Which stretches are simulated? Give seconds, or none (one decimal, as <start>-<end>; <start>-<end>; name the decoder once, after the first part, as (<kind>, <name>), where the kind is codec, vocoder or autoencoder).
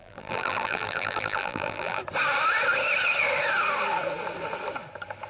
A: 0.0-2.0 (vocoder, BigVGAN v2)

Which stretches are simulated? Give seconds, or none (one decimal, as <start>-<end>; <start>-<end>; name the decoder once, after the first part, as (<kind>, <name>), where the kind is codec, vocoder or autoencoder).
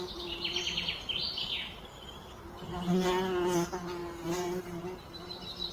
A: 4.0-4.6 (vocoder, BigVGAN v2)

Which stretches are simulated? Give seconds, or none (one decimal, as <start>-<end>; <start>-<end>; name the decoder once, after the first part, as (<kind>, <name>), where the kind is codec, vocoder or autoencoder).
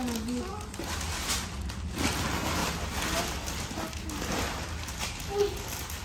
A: none